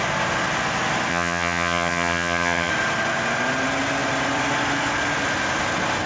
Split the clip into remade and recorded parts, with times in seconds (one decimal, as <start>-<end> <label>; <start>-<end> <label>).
0.0-1.1 recorded; 1.1-2.7 remade; 2.7-6.1 recorded